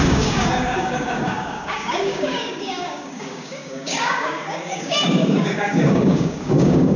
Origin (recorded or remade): remade